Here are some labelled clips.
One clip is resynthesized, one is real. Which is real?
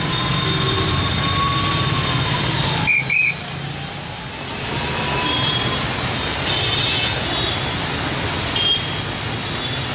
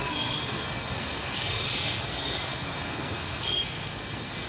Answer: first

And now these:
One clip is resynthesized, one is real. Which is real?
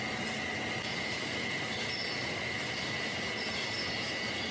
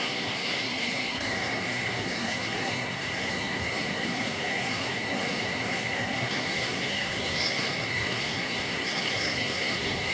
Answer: first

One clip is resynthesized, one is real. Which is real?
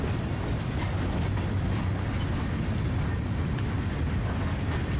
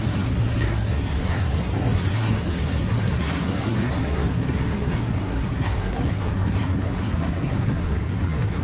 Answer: first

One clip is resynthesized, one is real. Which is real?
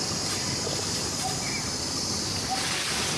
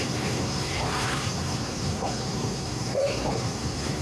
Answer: first